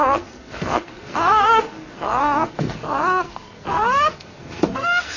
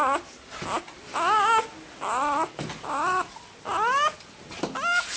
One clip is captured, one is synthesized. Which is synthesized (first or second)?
first